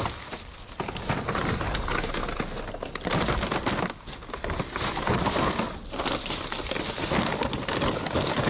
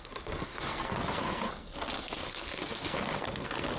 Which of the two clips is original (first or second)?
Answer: first